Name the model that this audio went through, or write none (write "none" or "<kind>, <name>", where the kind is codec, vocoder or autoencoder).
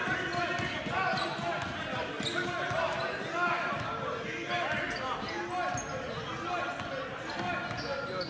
none